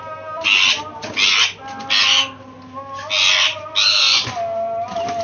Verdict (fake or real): real